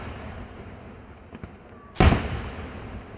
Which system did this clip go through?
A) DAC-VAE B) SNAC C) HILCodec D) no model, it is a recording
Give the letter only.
D